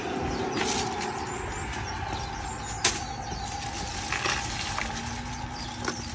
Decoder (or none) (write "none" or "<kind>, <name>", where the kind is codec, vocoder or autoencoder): none